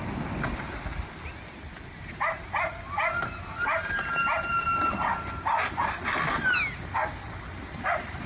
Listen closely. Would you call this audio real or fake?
real